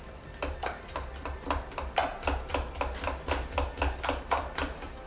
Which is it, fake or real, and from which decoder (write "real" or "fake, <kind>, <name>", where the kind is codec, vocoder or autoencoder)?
real